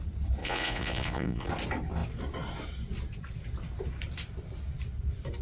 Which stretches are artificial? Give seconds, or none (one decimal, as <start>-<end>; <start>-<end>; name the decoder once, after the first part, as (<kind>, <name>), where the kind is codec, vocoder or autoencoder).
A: 0.4-1.5 (vocoder, Vocos)